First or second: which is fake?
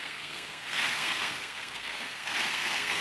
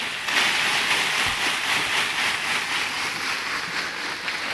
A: first